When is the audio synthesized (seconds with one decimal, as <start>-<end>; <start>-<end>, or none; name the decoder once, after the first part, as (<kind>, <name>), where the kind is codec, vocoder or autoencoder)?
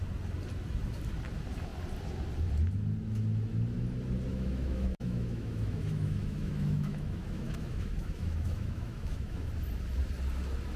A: 4.3-9.5 (autoencoder, DAC-VAE)